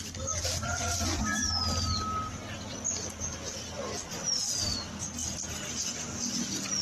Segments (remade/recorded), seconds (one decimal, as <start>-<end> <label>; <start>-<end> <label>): 0.0-6.8 recorded